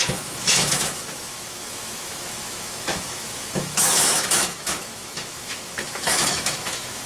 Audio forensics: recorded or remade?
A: remade